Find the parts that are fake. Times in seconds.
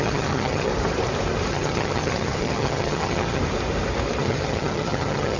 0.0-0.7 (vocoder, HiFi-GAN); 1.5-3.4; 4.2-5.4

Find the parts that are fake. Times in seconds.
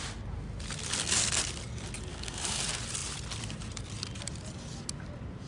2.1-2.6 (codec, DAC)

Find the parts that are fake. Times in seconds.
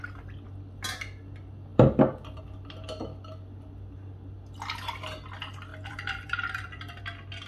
1.7-2.4 (vocoder, BigVGAN v2); 5.7-7.0